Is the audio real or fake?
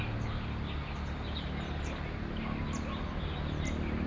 real